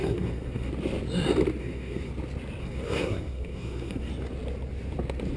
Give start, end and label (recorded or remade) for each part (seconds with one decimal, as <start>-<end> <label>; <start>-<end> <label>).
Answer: 0.0-0.7 remade; 0.7-1.6 recorded; 1.6-2.1 remade; 2.1-2.6 recorded; 2.6-4.1 remade; 4.1-5.4 recorded